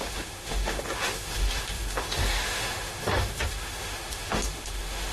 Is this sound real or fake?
fake